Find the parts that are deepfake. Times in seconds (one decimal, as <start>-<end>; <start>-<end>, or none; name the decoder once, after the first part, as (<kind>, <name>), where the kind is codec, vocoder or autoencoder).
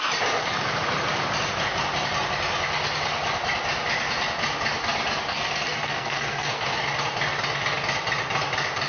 5.3-6.8 (codec, SNAC)